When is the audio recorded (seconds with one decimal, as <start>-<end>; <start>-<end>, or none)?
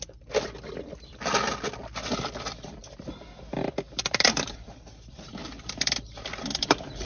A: none